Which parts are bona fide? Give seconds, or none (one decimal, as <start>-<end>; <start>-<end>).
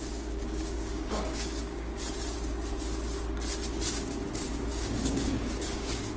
1.9-4.7